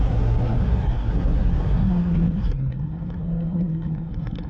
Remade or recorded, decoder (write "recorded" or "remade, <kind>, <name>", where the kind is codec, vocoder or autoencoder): remade, codec, SNAC